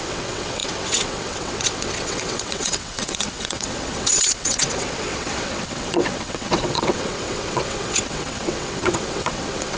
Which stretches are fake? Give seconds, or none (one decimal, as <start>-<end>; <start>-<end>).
0.0-9.8